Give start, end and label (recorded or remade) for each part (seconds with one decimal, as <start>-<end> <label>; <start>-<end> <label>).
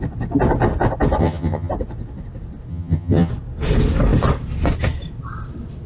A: 0.0-1.2 recorded; 1.2-1.7 remade; 1.7-2.7 recorded; 2.7-3.3 remade; 3.3-5.9 recorded